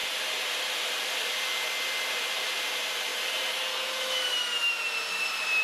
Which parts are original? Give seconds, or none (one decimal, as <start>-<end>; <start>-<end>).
0.0-2.1; 3.1-4.6

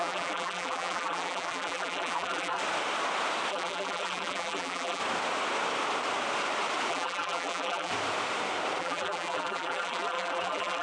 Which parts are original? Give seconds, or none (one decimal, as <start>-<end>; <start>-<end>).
2.6-3.5; 5.0-6.9; 7.9-8.8

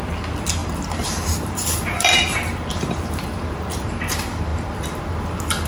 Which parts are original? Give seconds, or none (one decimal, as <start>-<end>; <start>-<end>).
0.0-0.6; 4.0-5.7

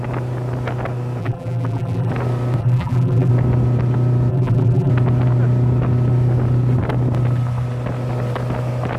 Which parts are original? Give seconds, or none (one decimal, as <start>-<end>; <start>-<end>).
0.0-1.2; 2.1-2.6; 3.3-4.3; 4.9-9.0

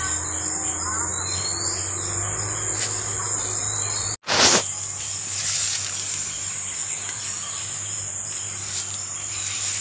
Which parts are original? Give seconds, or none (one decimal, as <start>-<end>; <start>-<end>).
0.0-5.2; 8.8-9.8

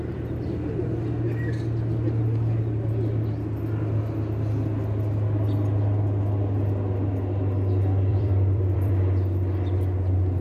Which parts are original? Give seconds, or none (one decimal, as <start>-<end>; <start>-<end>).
0.0-8.1; 8.9-10.4

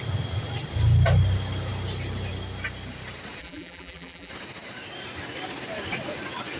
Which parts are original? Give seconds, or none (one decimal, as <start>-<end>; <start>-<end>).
0.0-3.4; 4.3-6.6